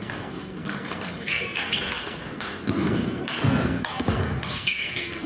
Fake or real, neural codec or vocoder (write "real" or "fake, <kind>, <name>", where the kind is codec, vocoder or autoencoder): fake, codec, SNAC